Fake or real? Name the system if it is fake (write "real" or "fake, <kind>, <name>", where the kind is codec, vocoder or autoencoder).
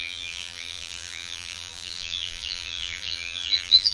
fake, vocoder, BigVGAN v2